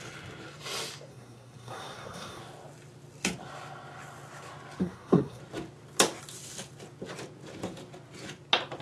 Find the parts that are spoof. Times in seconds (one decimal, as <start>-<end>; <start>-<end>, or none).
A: 1.1-2.4; 4.8-5.4